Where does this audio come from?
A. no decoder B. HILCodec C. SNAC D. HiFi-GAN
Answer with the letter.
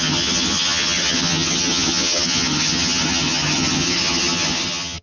D